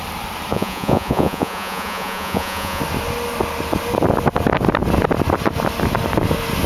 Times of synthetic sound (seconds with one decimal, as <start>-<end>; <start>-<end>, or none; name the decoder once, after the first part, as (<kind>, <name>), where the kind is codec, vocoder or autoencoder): 0.5-2.8 (vocoder, Vocos)